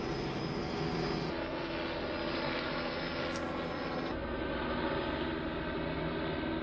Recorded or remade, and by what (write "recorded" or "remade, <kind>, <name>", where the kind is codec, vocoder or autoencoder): recorded